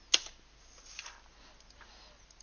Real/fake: real